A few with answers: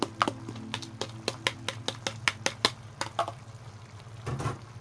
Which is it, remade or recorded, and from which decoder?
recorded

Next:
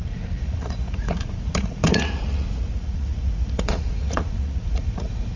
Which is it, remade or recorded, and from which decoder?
remade, vocoder, Vocos